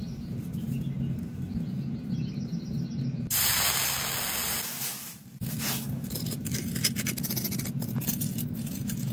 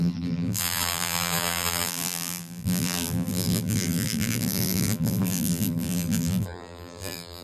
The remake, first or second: second